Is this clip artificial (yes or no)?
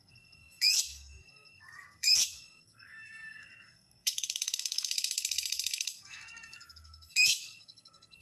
yes